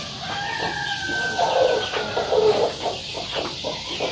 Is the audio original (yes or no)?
yes